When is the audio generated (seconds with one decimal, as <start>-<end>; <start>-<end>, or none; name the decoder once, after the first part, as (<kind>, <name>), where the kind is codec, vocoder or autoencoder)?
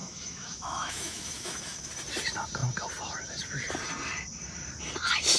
0.0-1.9 (autoencoder, DAC-VAE)